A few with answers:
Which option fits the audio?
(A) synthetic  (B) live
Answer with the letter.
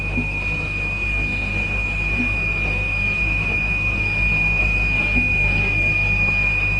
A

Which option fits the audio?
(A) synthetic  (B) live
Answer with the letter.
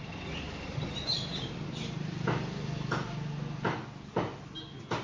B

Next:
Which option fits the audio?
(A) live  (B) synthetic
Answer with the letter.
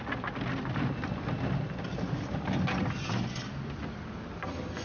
A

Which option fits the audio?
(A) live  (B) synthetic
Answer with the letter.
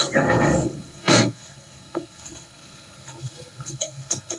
B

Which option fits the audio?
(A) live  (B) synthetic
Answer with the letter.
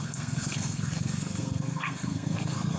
B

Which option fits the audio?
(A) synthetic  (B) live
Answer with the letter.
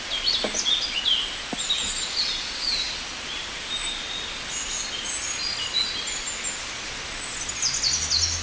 B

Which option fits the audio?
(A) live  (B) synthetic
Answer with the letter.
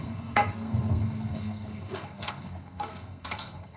B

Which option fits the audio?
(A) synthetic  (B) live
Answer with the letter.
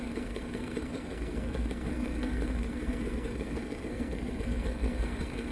A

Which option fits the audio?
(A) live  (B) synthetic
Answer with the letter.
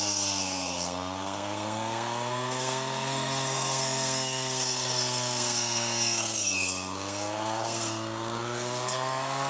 B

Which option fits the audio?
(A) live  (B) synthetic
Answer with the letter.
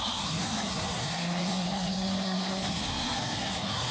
B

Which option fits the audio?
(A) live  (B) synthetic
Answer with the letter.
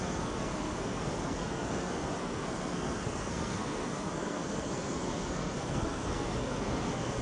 B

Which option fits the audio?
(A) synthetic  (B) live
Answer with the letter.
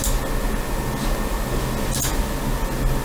B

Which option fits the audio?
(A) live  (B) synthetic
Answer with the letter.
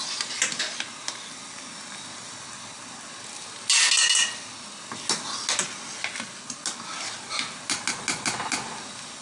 A